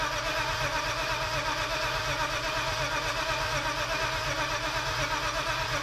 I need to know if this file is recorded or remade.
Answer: recorded